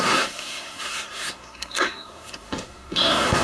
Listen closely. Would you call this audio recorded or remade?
remade